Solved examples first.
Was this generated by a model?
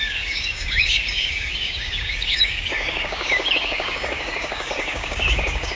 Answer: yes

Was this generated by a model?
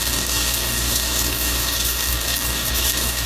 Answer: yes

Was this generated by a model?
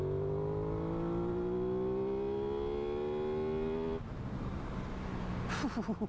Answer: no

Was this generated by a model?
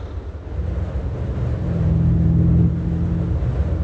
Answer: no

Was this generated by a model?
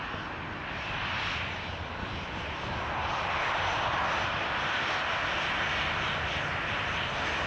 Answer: no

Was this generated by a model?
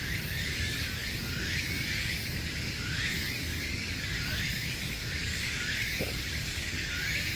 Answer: yes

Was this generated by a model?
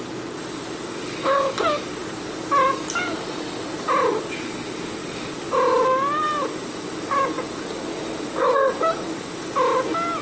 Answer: no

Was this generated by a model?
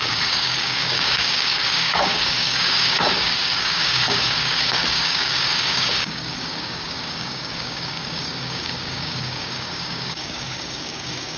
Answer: yes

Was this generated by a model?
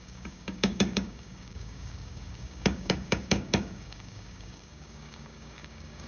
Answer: yes